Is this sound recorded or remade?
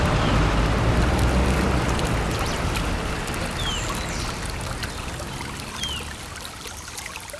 recorded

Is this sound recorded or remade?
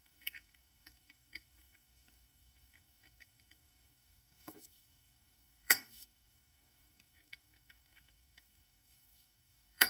remade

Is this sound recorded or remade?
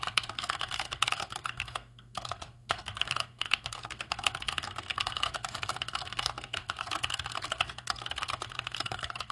remade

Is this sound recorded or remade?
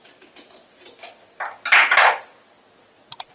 recorded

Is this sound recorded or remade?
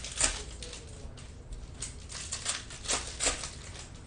recorded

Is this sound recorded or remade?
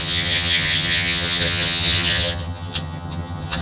remade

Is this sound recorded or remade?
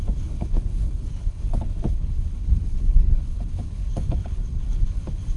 remade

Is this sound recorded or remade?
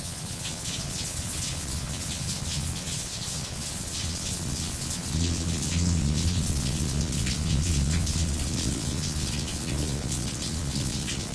remade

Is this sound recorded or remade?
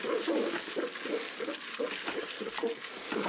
recorded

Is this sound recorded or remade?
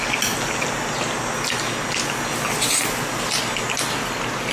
recorded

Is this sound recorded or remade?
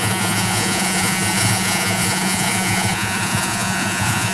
remade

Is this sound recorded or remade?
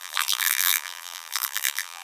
remade